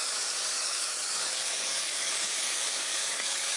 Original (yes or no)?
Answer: no